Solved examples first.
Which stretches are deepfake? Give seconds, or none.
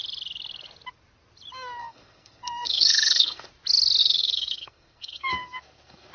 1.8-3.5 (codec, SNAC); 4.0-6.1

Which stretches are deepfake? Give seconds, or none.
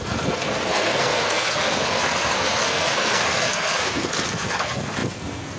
0.0-5.6 (codec, SNAC)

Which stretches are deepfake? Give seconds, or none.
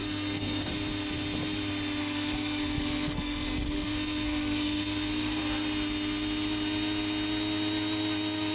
0.0-0.7 (codec, SNAC); 2.0-5.4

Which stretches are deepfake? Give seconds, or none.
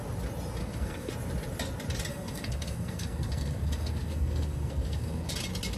0.6-1.1 (codec, SNAC); 2.1-5.3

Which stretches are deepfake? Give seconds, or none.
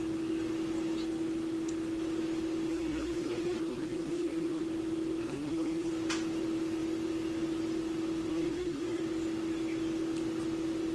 2.7-4.6 (codec, SNAC); 5.2-5.9; 8.3-9.0